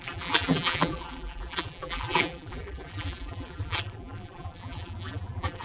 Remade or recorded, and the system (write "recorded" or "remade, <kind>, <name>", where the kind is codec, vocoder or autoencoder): remade, vocoder, BigVGAN v2